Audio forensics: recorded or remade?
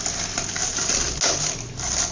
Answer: recorded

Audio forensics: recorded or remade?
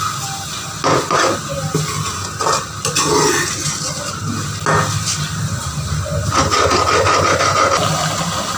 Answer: recorded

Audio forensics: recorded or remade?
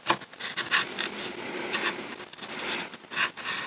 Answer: recorded